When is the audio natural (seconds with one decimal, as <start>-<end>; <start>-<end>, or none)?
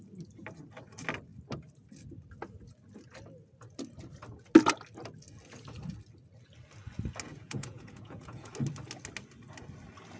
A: 0.0-7.3; 8.5-10.2